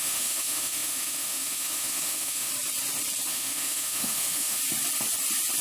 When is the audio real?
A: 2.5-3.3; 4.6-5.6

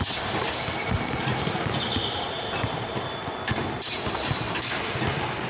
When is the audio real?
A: 0.0-0.8; 4.0-5.5

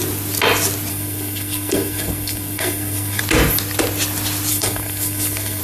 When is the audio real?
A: 0.0-0.9; 3.2-4.5

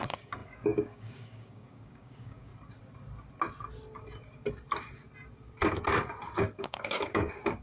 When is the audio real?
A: 2.5-6.6

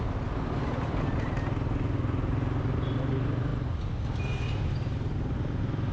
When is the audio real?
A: 0.0-5.9

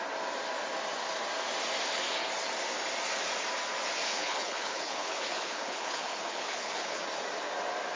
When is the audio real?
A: 0.0-4.1; 7.0-8.0